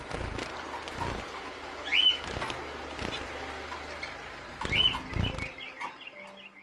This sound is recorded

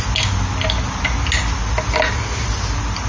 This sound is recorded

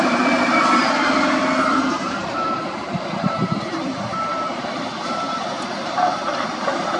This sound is remade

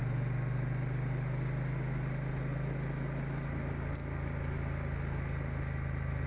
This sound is recorded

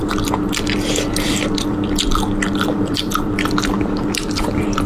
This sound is remade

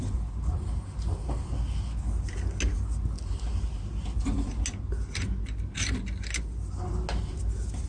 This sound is recorded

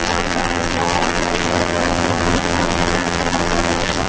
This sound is remade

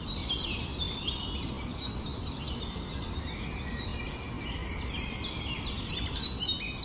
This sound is recorded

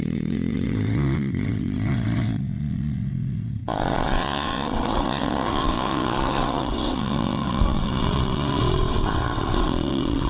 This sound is remade